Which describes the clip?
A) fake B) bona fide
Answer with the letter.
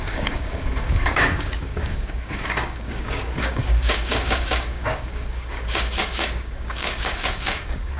A